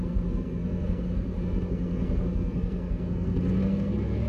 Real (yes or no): no